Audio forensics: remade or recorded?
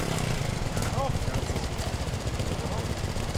recorded